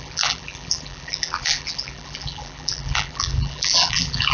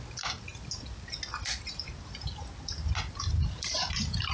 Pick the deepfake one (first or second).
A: first